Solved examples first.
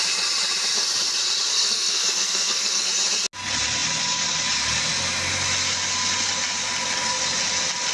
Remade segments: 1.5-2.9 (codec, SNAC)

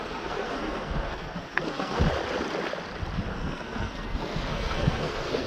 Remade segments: 0.0-2.0 (codec, SNAC); 3.3-5.5

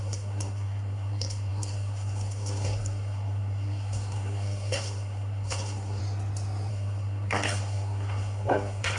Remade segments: 0.0-6.0 (codec, SNAC); 6.7-9.0